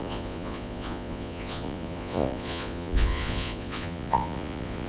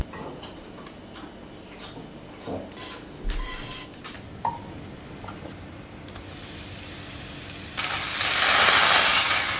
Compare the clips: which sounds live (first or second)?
second